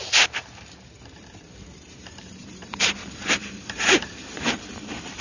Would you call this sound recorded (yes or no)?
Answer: no